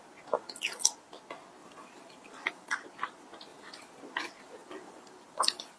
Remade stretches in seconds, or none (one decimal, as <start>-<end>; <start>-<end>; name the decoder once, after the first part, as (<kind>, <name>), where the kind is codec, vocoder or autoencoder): 1.6-2.7 (vocoder, BigVGAN v2); 3.5-4.0; 4.6-5.8